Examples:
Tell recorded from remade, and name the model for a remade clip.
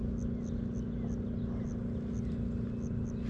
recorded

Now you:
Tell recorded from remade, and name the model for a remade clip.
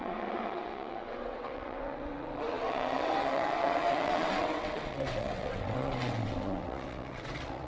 remade, vocoder, WaveNeXt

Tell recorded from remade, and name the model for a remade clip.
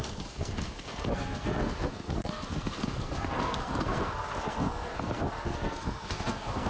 remade, codec, SNAC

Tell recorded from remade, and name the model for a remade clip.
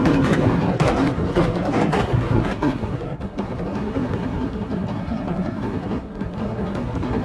remade, codec, SNAC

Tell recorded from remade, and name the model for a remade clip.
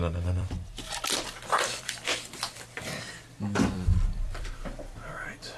remade, vocoder, BigVGAN v2